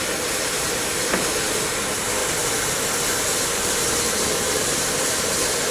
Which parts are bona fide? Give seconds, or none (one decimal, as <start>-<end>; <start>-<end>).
0.0-5.7